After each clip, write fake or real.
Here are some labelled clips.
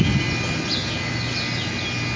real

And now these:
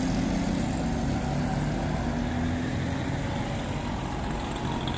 real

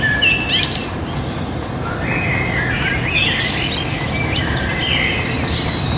real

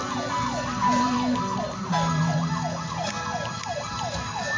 real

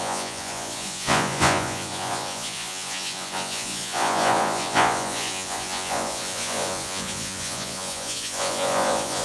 fake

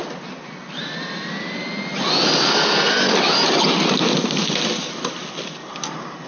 real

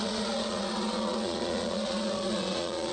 fake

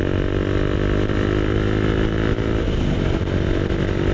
real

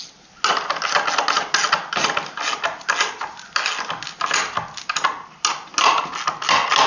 real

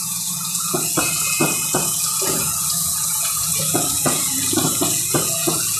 fake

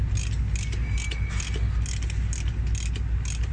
real